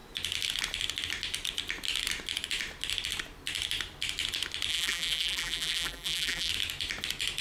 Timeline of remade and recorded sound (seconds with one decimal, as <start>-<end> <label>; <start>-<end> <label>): 0.0-4.7 recorded; 4.7-6.5 remade; 6.5-7.4 recorded

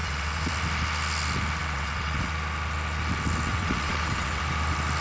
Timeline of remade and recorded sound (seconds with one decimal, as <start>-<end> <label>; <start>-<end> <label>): 0.0-0.5 remade; 0.5-1.6 recorded; 1.6-2.3 remade; 2.3-3.5 recorded; 3.5-4.4 remade; 4.4-5.0 recorded

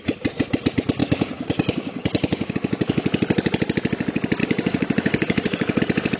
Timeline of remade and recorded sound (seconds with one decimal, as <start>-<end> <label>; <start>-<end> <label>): 0.0-1.0 recorded; 1.0-2.5 remade; 2.5-4.4 recorded; 4.4-5.8 remade; 5.8-6.2 recorded

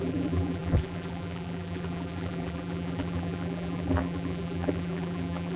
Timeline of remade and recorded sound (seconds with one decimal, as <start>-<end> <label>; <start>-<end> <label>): 0.0-5.6 remade

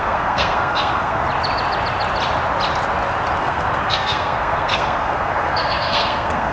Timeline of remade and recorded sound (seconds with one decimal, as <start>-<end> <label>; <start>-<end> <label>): 0.0-1.2 remade; 1.2-3.4 recorded; 3.4-6.5 remade